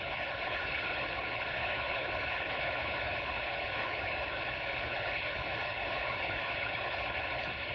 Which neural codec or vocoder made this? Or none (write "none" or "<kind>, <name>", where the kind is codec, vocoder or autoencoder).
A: codec, HILCodec